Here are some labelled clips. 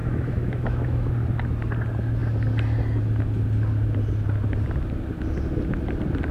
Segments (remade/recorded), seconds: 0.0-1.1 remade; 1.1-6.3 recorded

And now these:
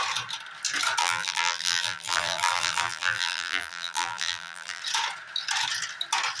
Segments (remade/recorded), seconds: 0.0-1.0 recorded; 1.0-4.8 remade; 4.8-6.4 recorded

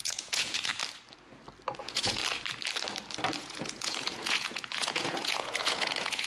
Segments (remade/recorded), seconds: 0.0-0.7 remade; 0.7-1.8 recorded; 1.8-2.2 remade; 2.2-3.4 recorded; 3.4-6.3 remade

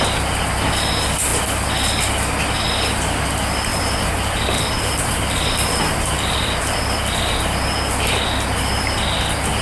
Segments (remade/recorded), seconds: 0.0-3.7 recorded; 3.7-7.3 remade; 7.3-9.6 recorded

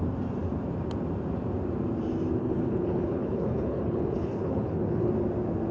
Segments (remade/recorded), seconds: 0.0-2.4 recorded; 2.4-5.1 remade; 5.1-5.7 recorded